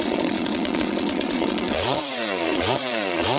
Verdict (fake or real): fake